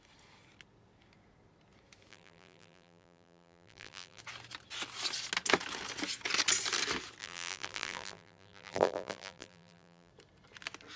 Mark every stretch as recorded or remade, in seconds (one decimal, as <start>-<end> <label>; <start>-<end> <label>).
0.0-2.1 recorded; 2.1-4.2 remade; 4.2-7.2 recorded; 7.2-10.1 remade; 10.1-11.0 recorded